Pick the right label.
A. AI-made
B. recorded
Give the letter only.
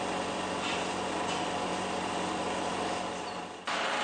B